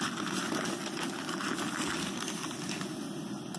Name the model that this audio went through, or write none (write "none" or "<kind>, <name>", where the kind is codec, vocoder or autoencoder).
none